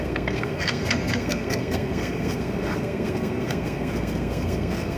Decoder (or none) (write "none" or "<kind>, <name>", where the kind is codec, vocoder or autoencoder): codec, SNAC